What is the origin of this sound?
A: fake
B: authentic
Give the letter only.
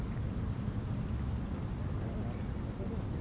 B